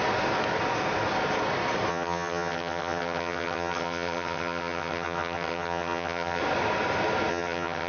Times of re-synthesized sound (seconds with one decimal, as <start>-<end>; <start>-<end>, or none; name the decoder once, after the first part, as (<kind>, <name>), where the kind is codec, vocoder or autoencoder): 1.9-6.4 (vocoder, HiFi-GAN); 7.3-7.9